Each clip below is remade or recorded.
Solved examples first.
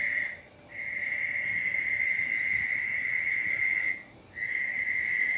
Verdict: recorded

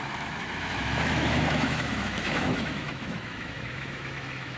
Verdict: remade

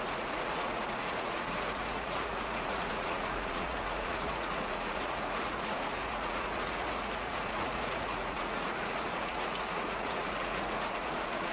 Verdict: remade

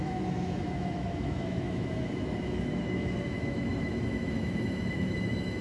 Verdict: remade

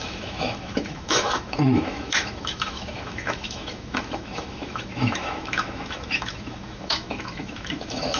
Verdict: remade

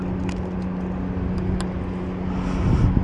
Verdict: recorded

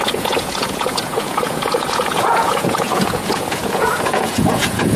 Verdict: remade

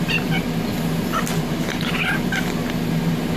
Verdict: recorded